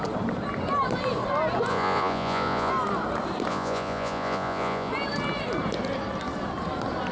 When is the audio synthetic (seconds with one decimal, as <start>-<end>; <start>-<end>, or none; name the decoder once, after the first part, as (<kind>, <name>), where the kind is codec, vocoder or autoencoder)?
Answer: 1.7-2.7 (vocoder, Vocos); 3.5-4.9